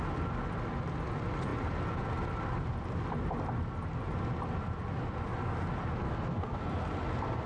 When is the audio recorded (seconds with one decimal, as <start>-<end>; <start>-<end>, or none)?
0.0-6.0; 6.6-7.5